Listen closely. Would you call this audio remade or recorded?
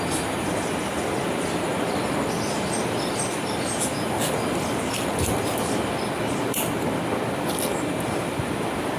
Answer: recorded